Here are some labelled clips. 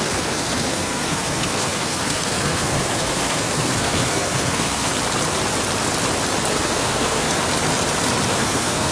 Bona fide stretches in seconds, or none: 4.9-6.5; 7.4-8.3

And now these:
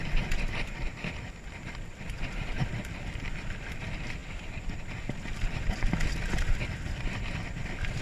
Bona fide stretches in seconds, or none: 0.0-8.0

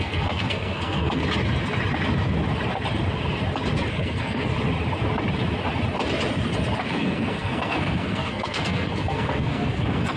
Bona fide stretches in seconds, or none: 1.2-3.9; 4.5-6.8

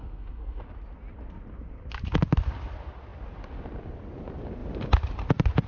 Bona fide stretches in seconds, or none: 0.6-5.7

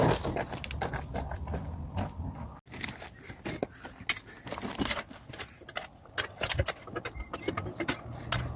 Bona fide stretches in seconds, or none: 0.0-8.6

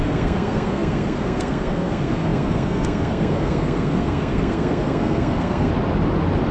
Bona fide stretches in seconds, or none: 5.7-6.5

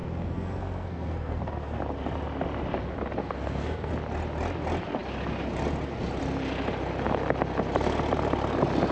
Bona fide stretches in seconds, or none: 1.8-3.2; 3.9-8.9

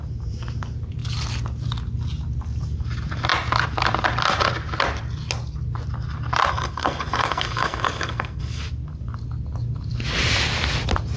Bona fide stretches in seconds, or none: 0.0-6.5; 8.6-11.2